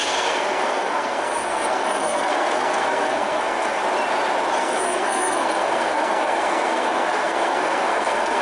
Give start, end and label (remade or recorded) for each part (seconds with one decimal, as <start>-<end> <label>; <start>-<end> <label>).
0.0-3.8 remade; 3.8-4.6 recorded; 4.6-8.4 remade